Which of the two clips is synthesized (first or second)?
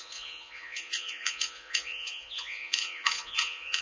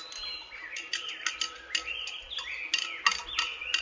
first